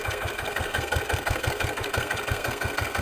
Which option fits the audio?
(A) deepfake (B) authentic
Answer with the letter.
A